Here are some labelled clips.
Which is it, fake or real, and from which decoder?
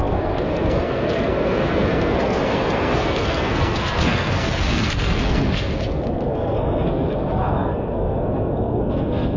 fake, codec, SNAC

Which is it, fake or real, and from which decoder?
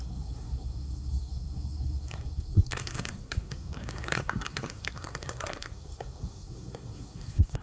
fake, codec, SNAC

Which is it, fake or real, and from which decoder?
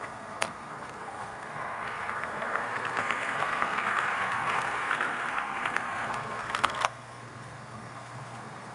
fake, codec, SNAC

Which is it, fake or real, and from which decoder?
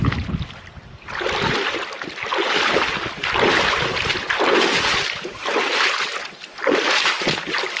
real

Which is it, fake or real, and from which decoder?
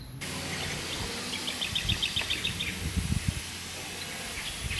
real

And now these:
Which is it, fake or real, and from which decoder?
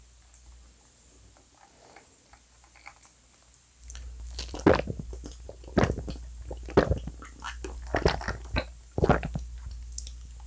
real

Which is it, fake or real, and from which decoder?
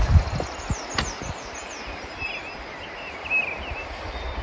real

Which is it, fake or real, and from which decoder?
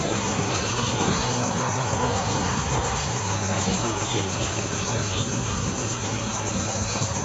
fake, codec, SNAC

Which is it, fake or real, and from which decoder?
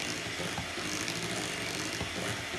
real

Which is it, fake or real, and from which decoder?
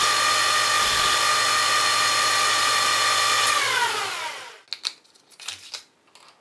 real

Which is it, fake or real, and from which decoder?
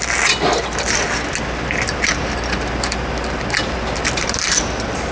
real